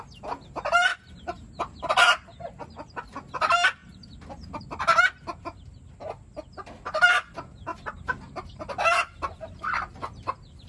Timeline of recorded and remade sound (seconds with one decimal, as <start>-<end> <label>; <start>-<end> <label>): 0.0-0.9 recorded; 0.9-1.9 remade; 1.9-3.8 recorded; 3.8-4.6 remade; 4.6-7.7 recorded; 7.7-9.0 remade; 9.0-10.7 recorded